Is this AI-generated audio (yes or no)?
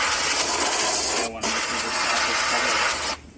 no